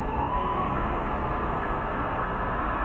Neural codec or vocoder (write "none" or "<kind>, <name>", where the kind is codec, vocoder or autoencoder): codec, SNAC